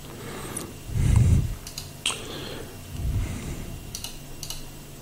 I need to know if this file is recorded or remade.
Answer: recorded